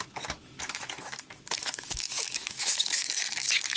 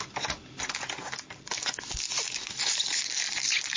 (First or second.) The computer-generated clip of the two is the first